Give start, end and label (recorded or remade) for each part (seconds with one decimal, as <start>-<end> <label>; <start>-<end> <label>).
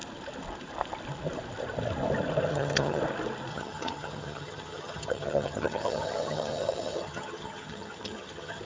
0.0-2.5 recorded; 2.5-3.0 remade; 3.0-3.5 recorded; 3.5-8.6 remade